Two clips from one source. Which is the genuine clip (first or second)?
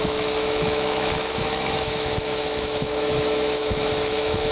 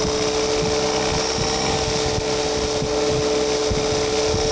second